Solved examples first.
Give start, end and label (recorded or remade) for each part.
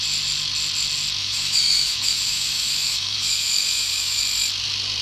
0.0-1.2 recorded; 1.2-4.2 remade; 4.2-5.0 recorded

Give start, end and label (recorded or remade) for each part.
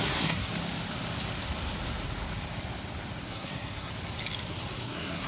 0.0-0.5 remade; 0.5-3.3 recorded; 3.3-3.9 remade; 3.9-4.8 recorded; 4.8-5.3 remade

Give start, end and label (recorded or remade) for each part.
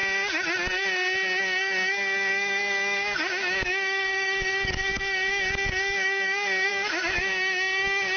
0.0-1.4 recorded; 1.4-8.2 remade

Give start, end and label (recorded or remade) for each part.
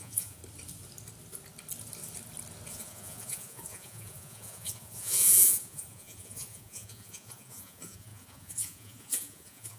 0.0-0.4 remade; 0.4-2.7 recorded; 2.7-9.8 remade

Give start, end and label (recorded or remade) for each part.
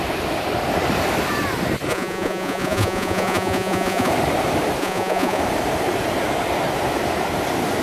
0.0-1.9 recorded; 1.9-4.1 remade; 4.1-4.8 recorded; 4.8-5.4 remade; 5.4-7.8 recorded